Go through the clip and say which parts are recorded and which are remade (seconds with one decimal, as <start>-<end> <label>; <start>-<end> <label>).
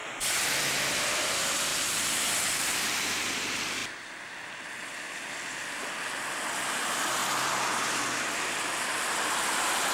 0.0-1.7 recorded; 1.7-3.3 remade; 3.3-7.2 recorded; 7.2-8.0 remade; 8.0-9.9 recorded